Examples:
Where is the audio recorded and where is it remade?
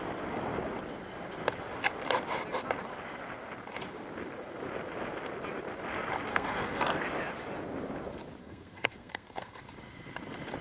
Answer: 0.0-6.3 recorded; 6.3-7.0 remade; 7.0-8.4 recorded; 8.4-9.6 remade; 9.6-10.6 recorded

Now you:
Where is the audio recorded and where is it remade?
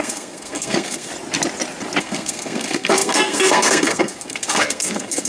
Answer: 0.0-1.1 remade; 1.1-2.0 recorded; 2.0-5.3 remade